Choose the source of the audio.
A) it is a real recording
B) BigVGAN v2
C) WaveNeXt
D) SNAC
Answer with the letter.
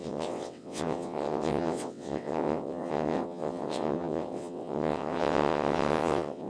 C